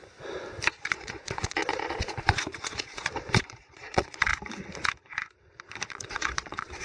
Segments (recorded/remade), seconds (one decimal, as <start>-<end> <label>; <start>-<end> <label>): 0.0-0.8 recorded; 0.8-4.3 remade; 4.3-5.9 recorded; 5.9-6.8 remade